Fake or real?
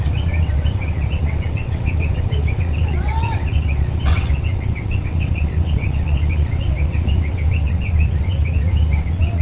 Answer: fake